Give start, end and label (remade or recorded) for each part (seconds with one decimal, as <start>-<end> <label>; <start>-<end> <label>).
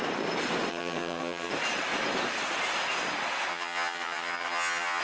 0.0-0.7 recorded; 0.7-1.5 remade; 1.5-3.5 recorded; 3.5-5.0 remade